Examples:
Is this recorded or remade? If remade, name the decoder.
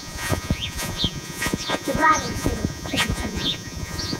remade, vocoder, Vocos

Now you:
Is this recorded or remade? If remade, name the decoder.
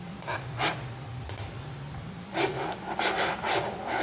recorded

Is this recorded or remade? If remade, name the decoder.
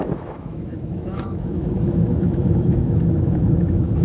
remade, autoencoder, DAC-VAE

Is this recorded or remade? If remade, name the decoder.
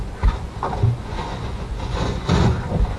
remade, vocoder, Vocos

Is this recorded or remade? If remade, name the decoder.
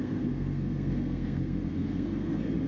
remade, codec, SNAC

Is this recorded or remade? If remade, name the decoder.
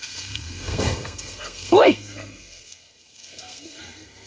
remade, codec, SNAC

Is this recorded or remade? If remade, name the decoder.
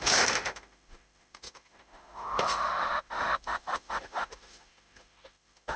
remade, autoencoder, DAC-VAE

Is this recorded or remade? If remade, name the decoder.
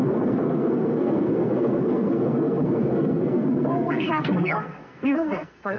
remade, codec, SNAC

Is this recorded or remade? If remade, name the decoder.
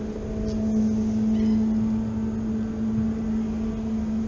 recorded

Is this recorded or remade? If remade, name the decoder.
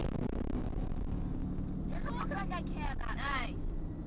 recorded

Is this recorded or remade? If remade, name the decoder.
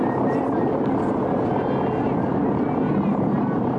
recorded